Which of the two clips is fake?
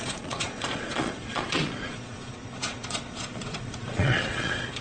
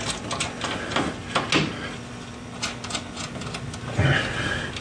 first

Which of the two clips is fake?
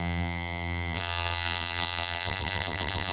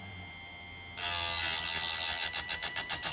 first